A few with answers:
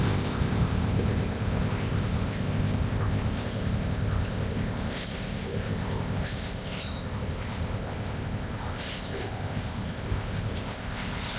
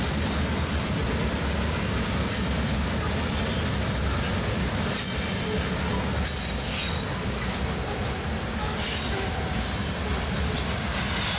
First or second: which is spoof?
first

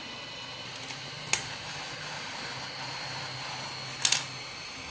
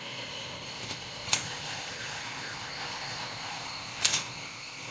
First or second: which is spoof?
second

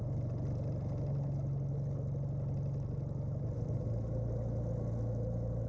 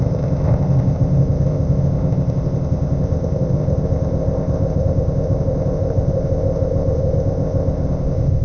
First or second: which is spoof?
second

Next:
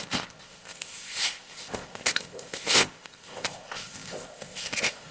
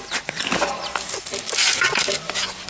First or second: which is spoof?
first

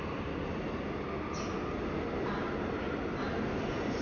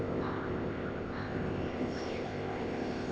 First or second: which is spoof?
second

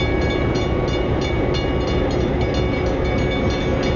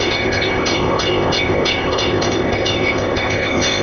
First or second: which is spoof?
second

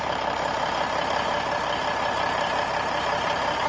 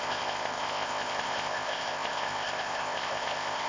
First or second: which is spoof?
second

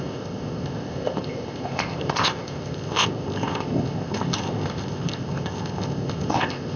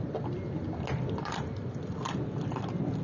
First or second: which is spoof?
first